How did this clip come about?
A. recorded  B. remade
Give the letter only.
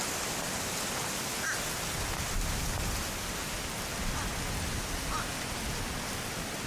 A